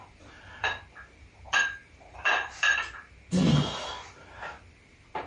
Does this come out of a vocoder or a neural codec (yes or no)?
yes